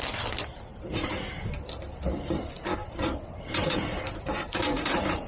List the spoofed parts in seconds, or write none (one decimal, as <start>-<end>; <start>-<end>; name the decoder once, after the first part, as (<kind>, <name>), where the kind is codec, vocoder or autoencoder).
0.7-1.3 (vocoder, BigVGAN v2); 2.7-5.3